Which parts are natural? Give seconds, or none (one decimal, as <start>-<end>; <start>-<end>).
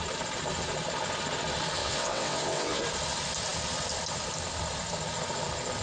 0.0-1.8; 2.8-5.8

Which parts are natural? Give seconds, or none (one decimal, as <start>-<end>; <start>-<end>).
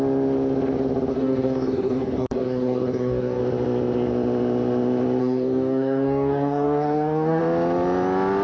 0.0-1.1; 3.4-5.2; 7.4-8.4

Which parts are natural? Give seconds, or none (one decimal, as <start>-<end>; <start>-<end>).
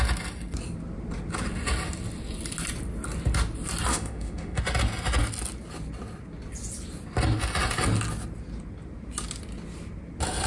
0.0-3.9; 4.6-10.5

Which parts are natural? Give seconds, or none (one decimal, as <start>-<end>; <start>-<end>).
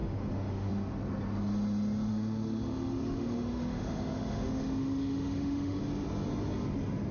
0.7-2.1; 5.8-7.1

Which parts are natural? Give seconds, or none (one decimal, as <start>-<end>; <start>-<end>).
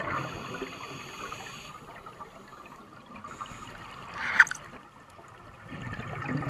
0.0-6.5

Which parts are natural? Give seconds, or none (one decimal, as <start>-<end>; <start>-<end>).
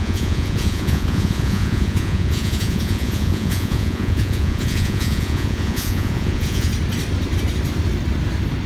6.7-8.7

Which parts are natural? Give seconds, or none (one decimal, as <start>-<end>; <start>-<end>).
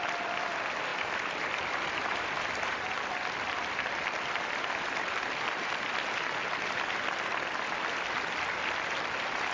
0.0-0.9; 5.8-9.5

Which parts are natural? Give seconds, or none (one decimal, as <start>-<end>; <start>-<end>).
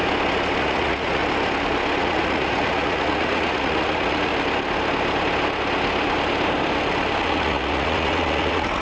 0.0-0.6; 1.2-2.0; 4.3-7.2